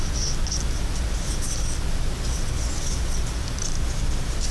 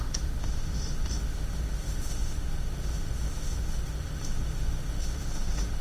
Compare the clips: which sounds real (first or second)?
first